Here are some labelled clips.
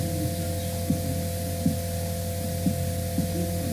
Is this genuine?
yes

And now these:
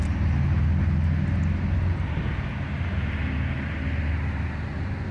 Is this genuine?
yes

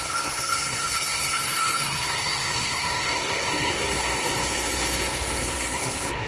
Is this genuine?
no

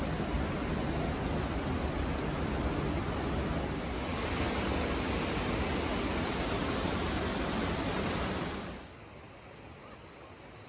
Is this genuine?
yes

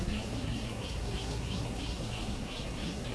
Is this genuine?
no